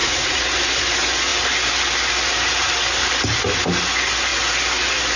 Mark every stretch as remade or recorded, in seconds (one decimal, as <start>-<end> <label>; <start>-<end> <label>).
0.0-0.5 remade; 0.5-5.2 recorded